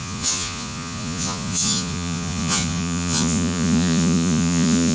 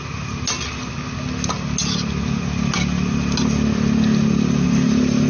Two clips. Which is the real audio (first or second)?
second